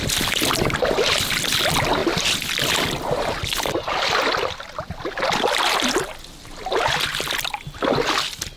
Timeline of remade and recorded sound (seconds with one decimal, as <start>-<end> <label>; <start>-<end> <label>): 0.0-8.6 recorded